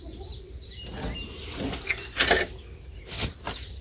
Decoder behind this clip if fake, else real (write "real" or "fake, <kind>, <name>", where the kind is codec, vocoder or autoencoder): real